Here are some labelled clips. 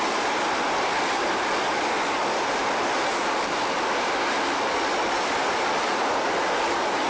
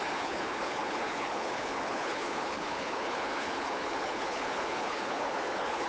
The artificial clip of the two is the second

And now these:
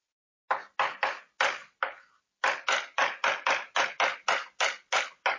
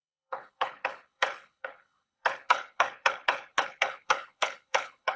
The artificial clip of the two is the second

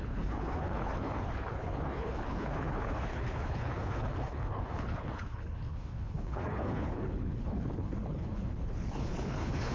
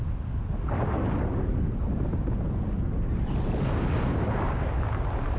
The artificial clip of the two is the first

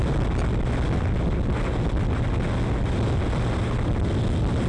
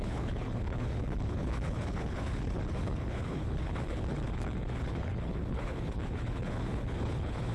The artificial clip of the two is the second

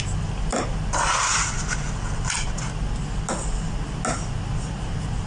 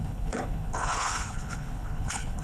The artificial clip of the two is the second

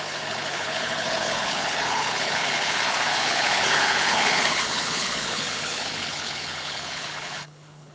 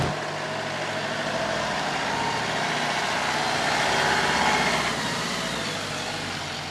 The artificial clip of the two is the first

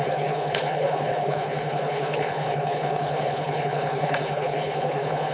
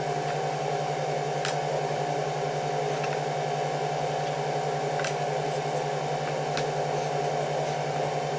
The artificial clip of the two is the first